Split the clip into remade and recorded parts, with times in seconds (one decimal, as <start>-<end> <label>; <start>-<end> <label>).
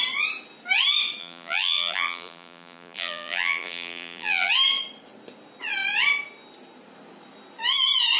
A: 0.0-1.2 recorded; 1.2-4.5 remade; 4.5-8.2 recorded